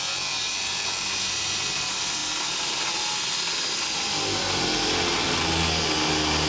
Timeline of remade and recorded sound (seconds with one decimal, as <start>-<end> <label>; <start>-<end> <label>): 0.0-6.5 recorded